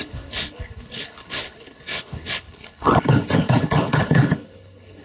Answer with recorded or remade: remade